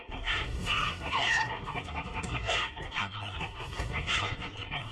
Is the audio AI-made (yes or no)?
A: yes